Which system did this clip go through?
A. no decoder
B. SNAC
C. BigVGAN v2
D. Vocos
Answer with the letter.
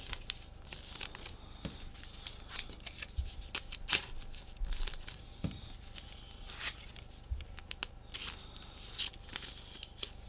A